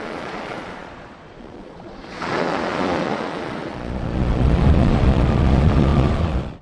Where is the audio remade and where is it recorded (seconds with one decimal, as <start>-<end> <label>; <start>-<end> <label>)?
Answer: 0.0-6.6 remade